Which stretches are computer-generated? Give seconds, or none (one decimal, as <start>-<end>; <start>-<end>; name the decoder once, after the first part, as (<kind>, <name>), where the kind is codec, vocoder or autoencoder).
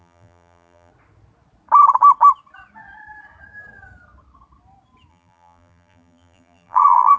0.0-0.9 (vocoder, BigVGAN v2); 5.1-7.2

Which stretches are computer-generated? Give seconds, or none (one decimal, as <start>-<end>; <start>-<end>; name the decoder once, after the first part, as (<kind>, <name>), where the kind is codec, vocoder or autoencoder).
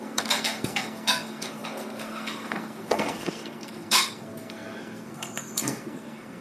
0.0-6.4 (codec, SNAC)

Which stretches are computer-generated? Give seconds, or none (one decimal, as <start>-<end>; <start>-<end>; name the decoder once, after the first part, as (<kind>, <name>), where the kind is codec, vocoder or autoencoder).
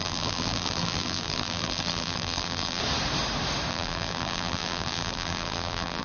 0.0-2.8 (vocoder, BigVGAN v2); 3.7-6.0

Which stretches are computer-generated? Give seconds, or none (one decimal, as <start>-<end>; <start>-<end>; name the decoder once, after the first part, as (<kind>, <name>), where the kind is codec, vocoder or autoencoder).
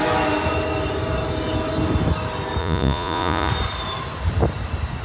2.6-3.5 (vocoder, Vocos)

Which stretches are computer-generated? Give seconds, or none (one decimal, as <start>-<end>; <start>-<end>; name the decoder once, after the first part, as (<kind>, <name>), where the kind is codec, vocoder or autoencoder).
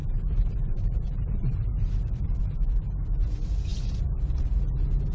0.0-2.4 (vocoder, BigVGAN v2); 3.7-4.5